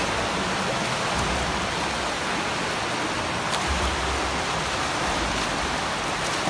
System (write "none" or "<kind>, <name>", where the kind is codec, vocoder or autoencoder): none